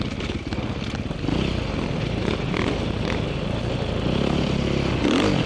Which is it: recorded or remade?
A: recorded